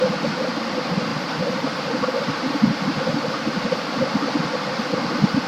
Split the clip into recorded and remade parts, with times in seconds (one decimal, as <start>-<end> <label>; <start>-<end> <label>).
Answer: 0.0-1.1 recorded; 1.1-4.4 remade; 4.4-5.5 recorded